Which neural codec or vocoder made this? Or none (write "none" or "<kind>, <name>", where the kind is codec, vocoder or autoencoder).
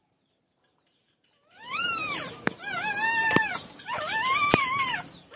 vocoder, BigVGAN v2